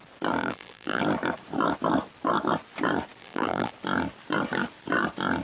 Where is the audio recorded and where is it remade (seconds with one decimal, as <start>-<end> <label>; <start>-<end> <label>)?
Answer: 0.0-0.4 recorded; 0.4-1.0 remade; 1.0-3.2 recorded; 3.2-3.7 remade; 3.7-5.4 recorded